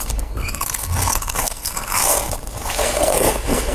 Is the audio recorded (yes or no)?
no